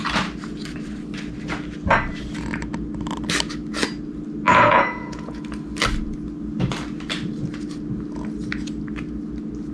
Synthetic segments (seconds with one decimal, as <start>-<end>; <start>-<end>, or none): 4.5-5.4